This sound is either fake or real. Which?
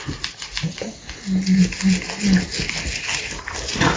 real